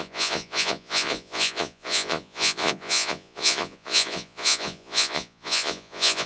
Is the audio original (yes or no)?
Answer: no